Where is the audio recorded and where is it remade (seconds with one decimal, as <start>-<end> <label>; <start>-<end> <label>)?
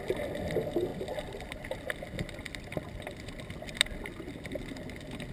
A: 0.0-5.3 recorded